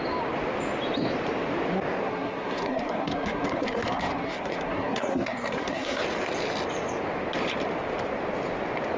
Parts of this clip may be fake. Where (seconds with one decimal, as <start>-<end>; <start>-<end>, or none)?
2.0-6.0